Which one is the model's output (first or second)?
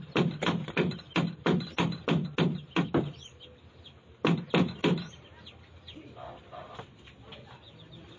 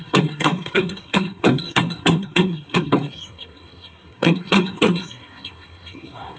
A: second